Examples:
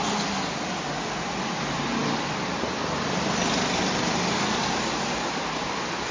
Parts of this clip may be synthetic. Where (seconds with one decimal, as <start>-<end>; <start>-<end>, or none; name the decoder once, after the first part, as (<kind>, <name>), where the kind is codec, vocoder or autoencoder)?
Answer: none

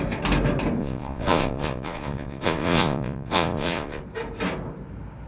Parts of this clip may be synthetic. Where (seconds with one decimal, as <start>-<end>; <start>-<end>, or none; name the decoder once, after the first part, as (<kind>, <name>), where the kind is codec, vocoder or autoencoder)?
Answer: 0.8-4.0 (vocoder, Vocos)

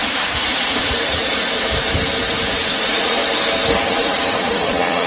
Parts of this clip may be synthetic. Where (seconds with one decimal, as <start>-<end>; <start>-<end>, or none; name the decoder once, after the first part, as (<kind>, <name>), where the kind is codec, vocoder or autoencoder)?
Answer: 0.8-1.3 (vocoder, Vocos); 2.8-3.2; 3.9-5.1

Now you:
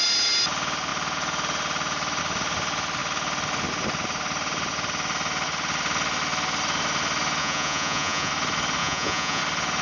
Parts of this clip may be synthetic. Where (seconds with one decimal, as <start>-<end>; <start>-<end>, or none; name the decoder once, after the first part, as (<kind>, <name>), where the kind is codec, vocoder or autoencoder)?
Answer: 7.4-8.3 (vocoder, Vocos); 8.8-9.4

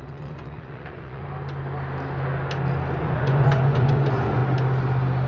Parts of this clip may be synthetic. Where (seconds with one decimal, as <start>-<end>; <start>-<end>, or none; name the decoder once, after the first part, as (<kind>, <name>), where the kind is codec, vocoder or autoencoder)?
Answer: 0.0-1.2 (vocoder, Vocos); 3.0-4.4

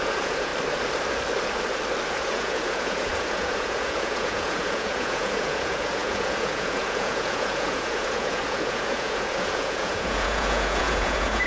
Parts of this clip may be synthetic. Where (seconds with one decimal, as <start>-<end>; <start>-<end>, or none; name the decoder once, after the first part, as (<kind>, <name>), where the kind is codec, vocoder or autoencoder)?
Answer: 0.0-0.5 (vocoder, Vocos); 2.1-11.5

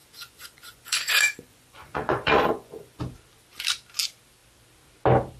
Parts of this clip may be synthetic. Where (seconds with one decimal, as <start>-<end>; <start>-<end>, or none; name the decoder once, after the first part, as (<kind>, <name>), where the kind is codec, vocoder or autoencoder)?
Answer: 0.0-3.0 (vocoder, Vocos)

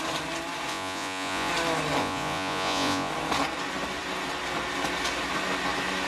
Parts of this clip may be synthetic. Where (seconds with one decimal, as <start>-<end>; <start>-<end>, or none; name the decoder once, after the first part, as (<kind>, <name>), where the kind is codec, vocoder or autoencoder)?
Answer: 0.7-1.5 (vocoder, Vocos); 2.0-3.1